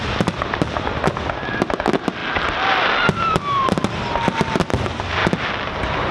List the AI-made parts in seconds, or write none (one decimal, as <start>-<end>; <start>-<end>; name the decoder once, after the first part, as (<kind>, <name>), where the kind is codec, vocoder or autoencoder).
none